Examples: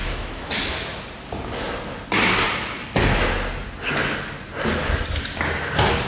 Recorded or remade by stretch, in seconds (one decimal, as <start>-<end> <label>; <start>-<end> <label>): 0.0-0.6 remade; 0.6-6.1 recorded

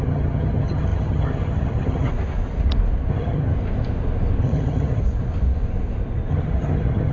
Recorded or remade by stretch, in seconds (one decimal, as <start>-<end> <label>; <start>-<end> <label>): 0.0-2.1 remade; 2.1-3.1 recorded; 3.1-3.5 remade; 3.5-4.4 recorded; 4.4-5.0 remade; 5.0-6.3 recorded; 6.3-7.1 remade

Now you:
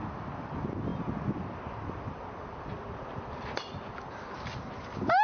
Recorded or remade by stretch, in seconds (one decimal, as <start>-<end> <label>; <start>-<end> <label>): 0.0-5.2 recorded

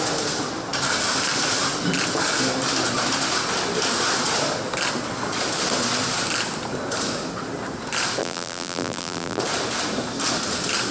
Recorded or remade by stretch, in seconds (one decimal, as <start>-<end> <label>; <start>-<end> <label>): 0.0-8.2 recorded; 8.2-9.4 remade; 9.4-10.9 recorded